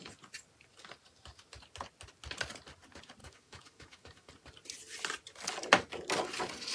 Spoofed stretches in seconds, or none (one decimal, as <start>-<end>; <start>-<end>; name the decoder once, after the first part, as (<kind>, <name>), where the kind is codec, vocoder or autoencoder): 3.2-4.3 (autoencoder, DAC-VAE)